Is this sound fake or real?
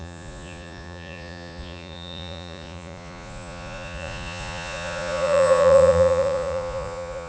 fake